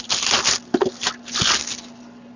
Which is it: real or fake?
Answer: real